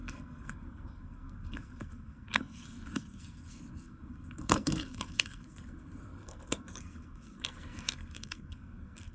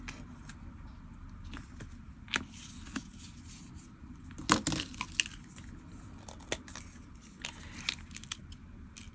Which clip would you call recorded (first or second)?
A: second